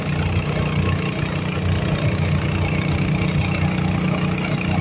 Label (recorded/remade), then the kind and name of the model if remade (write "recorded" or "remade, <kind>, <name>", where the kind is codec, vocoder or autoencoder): recorded